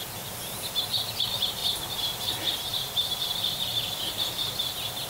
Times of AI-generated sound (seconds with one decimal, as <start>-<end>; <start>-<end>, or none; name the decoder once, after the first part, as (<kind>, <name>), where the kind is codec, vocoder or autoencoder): 2.7-4.6 (vocoder, BigVGAN v2)